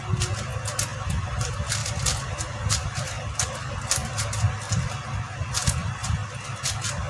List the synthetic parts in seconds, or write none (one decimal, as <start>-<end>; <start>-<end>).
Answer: 1.8-5.2; 6.2-7.1